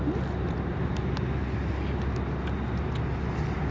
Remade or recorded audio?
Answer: recorded